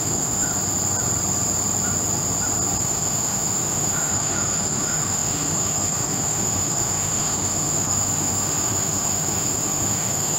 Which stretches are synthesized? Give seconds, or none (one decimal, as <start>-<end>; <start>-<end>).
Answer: 0.0-0.5; 2.8-10.4